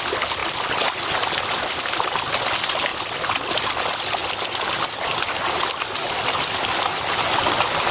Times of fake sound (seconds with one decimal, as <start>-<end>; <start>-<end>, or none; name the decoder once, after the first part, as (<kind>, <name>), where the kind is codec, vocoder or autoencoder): 0.4-1.1 (vocoder, BigVGAN v2); 2.9-3.5